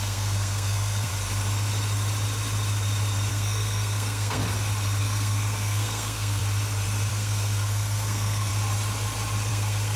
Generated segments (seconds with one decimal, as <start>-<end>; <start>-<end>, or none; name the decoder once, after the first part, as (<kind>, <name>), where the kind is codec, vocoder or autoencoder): 0.0-1.1 (codec, SNAC); 3.3-4.4; 5.0-6.4; 7.1-8.5; 9.5-10.0